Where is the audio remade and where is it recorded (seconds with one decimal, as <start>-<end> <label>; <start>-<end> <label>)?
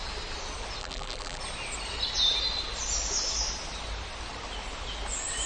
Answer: 0.0-0.8 recorded; 0.8-1.4 remade; 1.4-5.5 recorded